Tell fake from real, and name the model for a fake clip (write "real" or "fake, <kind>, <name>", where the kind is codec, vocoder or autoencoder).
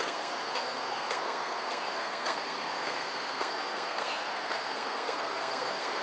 fake, codec, SNAC